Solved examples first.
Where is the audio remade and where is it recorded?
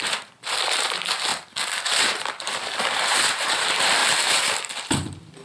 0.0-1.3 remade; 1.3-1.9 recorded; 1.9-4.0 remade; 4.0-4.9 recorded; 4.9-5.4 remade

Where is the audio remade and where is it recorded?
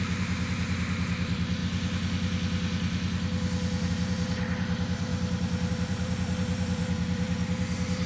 0.0-1.6 remade; 1.6-3.9 recorded; 3.9-5.1 remade; 5.1-5.7 recorded; 5.7-8.1 remade